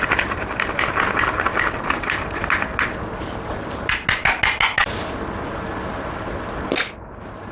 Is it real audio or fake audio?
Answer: real